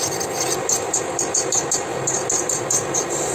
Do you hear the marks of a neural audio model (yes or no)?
no